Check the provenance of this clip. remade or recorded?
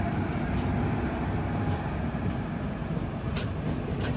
recorded